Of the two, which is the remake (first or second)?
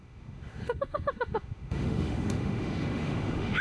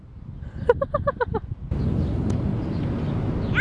first